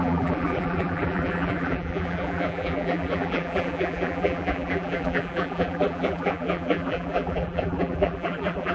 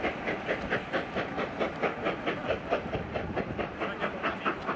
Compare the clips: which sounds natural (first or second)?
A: second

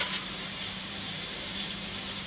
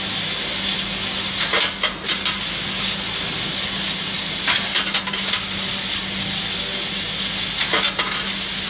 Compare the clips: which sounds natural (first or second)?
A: second